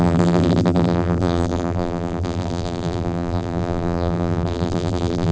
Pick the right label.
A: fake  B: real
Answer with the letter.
A